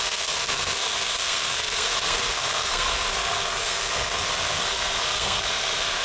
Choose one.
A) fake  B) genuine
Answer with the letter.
A